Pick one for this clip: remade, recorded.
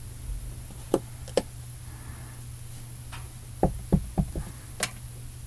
recorded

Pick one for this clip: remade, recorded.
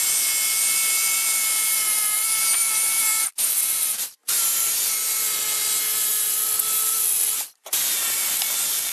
recorded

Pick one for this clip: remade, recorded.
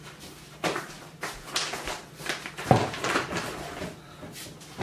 remade